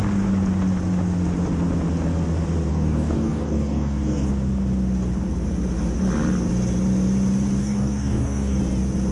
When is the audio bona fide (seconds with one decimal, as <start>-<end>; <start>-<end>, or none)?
0.0-2.7; 4.3-7.6; 8.6-9.1